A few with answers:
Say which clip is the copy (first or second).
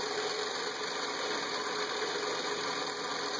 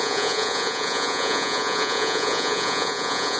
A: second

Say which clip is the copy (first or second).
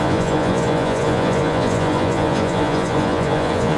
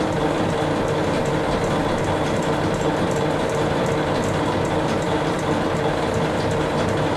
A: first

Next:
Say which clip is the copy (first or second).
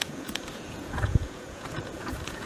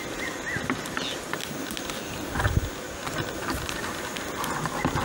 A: first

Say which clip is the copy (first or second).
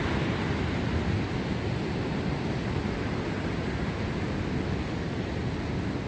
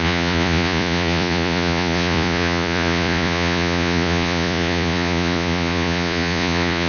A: second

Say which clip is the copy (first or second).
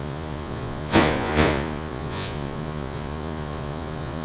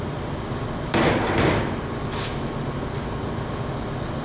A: first